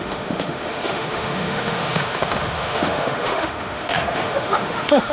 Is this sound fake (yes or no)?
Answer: yes